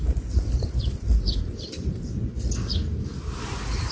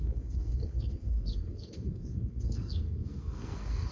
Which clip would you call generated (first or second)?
second